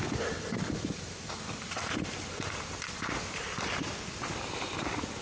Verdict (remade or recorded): recorded